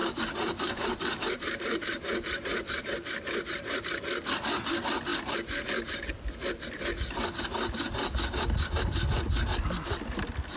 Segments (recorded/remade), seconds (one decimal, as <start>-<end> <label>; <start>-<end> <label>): 0.0-2.8 remade; 2.8-10.6 recorded